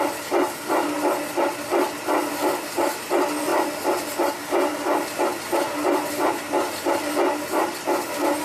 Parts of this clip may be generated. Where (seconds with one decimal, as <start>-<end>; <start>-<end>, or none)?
none